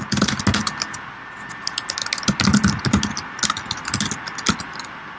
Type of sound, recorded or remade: recorded